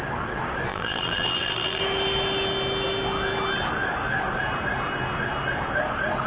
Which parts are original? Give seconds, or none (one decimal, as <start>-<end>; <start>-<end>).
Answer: 0.0-0.7; 1.8-6.3